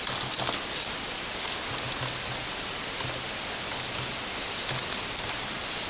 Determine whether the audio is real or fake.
real